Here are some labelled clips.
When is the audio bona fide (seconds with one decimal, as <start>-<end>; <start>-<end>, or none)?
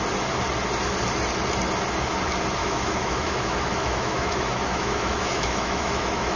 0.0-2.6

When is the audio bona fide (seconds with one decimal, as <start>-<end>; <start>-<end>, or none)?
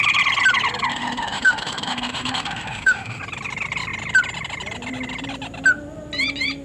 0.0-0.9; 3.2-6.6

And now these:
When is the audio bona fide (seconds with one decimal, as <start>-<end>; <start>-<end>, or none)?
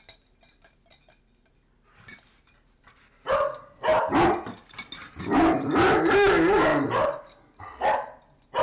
0.0-8.6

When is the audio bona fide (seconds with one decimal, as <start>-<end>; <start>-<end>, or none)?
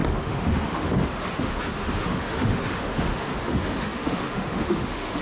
none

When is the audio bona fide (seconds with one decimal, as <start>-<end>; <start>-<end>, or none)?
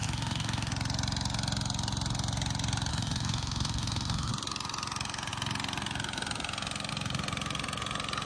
0.7-2.9; 4.3-8.3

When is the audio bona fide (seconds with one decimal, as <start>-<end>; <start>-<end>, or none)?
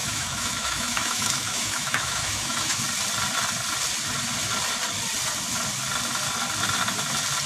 2.8-7.5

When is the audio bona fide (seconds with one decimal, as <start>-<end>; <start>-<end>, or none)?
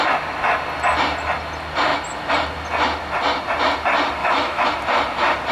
0.0-4.2; 4.7-5.5